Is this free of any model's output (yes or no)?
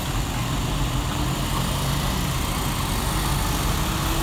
yes